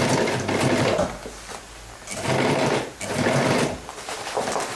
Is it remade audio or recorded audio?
recorded